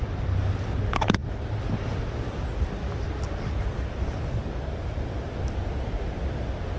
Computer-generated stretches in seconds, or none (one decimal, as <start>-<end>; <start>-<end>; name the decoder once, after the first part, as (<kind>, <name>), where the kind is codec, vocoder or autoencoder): none